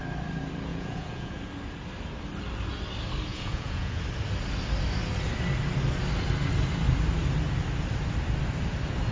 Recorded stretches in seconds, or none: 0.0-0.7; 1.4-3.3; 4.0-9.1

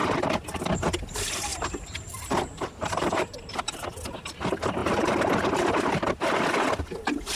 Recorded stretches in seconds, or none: 0.0-1.5; 3.5-4.8; 5.8-7.3

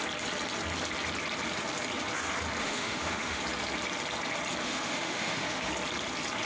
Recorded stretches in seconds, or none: 0.0-2.6; 3.4-4.6; 5.7-6.4